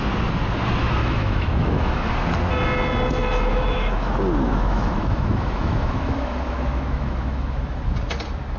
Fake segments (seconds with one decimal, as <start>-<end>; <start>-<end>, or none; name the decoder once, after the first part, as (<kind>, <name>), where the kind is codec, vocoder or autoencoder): 1.0-2.1 (autoencoder, DAC-VAE); 3.5-4.1; 4.5-7.8